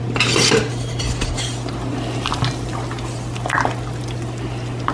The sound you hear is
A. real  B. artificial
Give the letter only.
A